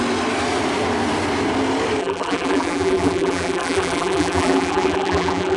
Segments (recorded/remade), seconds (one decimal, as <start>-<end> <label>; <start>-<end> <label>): 0.0-2.0 recorded; 2.0-5.6 remade